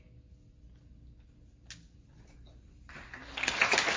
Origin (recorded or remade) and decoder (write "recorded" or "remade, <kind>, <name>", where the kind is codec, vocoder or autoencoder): recorded